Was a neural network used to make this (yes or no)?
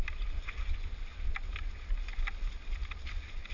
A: no